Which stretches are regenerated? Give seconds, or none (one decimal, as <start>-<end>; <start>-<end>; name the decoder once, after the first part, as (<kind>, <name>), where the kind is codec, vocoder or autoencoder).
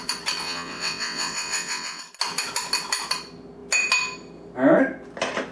0.4-2.0 (vocoder, WaveNeXt)